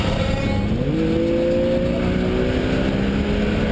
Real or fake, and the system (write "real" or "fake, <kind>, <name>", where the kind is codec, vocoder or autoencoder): real